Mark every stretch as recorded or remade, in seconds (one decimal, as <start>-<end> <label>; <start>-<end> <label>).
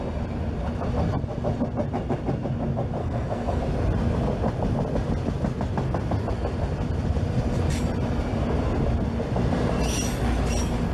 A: 0.0-3.0 recorded; 3.0-3.6 remade; 3.6-10.9 recorded